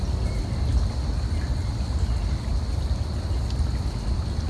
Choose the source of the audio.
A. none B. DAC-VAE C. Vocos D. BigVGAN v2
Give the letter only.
A